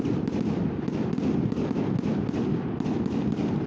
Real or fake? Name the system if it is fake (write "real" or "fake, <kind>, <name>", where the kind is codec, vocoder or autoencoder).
real